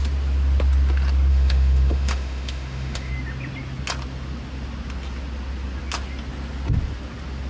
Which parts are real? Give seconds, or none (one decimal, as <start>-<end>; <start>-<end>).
0.0-1.3; 3.1-7.5